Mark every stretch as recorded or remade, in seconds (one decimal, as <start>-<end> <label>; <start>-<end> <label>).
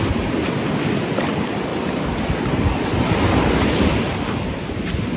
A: 0.0-5.2 recorded